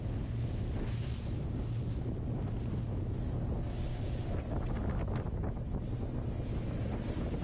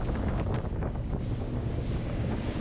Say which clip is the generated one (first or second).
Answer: second